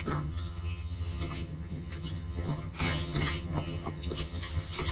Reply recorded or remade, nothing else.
remade